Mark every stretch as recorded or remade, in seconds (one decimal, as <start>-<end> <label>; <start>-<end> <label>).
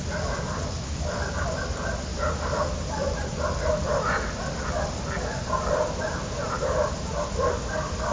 0.0-8.1 recorded